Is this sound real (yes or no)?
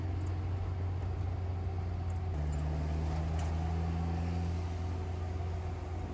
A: yes